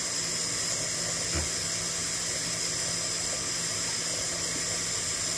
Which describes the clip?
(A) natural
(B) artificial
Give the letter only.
A